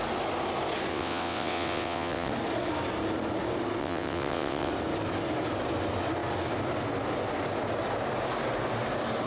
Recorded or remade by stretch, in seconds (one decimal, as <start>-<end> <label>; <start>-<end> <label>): 0.0-0.9 recorded; 0.9-2.3 remade; 2.3-3.8 recorded; 3.8-4.7 remade; 4.7-9.3 recorded